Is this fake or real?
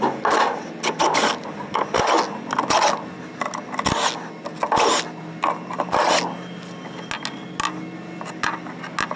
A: real